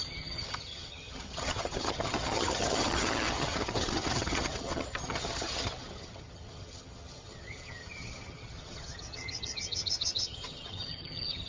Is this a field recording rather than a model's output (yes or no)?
no